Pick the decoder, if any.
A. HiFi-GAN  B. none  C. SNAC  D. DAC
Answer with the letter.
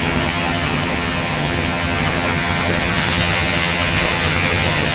A